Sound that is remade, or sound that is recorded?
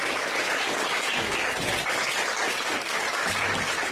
remade